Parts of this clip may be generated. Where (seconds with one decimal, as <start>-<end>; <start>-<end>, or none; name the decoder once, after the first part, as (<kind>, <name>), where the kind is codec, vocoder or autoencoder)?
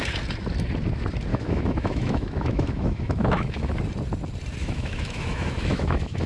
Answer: 1.3-3.7 (autoencoder, DAC-VAE); 4.6-6.3